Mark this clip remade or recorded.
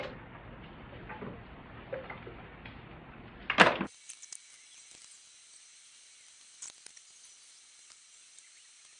recorded